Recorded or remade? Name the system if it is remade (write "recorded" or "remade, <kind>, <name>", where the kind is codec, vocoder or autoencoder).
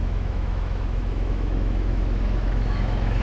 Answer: remade, autoencoder, DAC-VAE